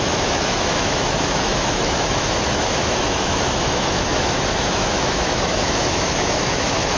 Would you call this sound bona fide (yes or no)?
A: no